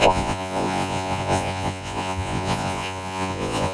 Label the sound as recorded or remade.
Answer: remade